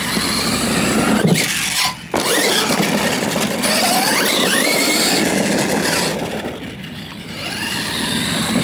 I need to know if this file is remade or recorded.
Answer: recorded